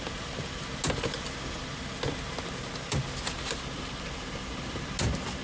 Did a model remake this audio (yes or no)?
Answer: no